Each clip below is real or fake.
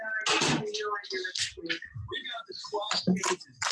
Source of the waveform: real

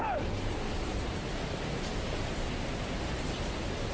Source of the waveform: real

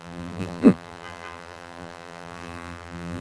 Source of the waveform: fake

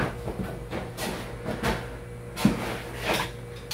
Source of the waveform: real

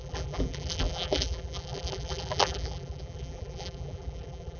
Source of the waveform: fake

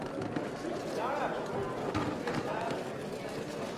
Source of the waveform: real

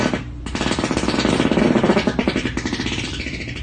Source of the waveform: real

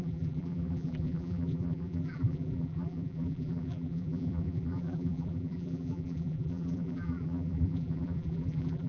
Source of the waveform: fake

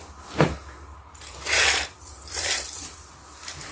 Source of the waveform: real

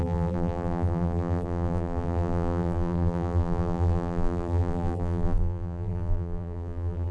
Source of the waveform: fake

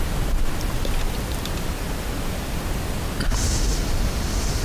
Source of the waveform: real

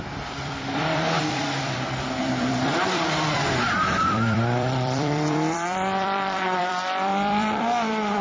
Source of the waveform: fake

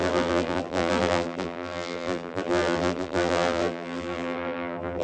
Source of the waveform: fake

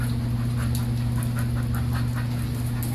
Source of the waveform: real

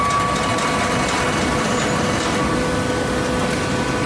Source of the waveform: real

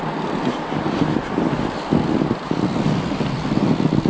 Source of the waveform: real